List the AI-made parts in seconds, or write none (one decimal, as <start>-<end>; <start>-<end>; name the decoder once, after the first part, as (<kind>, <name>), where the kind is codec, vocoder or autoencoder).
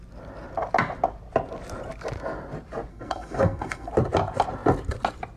2.9-3.9 (codec, SNAC)